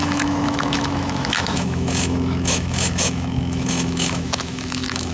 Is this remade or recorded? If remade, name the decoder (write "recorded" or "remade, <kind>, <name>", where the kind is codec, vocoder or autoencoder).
remade, autoencoder, DAC-VAE